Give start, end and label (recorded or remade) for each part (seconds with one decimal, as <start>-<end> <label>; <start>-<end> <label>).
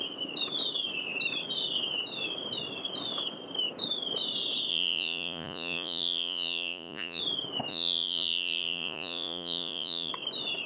0.0-4.7 recorded; 4.7-7.2 remade; 7.2-7.7 recorded; 7.7-10.1 remade; 10.1-10.7 recorded